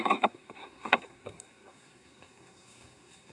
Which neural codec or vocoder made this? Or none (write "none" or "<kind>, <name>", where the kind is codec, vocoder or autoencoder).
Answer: codec, SNAC